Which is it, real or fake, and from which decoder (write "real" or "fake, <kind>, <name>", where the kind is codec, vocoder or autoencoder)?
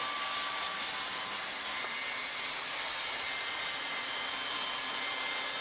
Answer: real